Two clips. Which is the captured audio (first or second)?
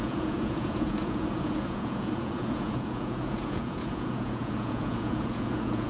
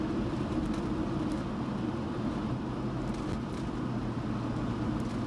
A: second